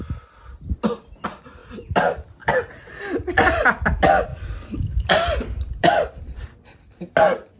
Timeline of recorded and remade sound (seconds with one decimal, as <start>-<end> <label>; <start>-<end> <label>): 0.0-4.3 recorded; 4.3-6.4 remade; 6.4-7.6 recorded